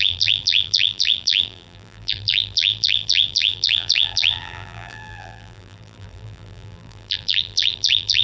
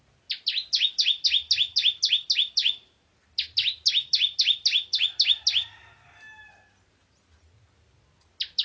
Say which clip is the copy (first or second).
first